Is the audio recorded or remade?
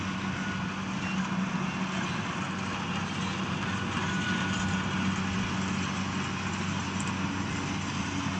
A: recorded